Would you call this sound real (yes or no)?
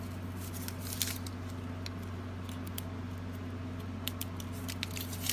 yes